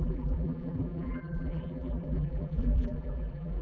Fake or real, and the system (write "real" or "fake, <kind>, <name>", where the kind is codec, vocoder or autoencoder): fake, vocoder, BigVGAN v2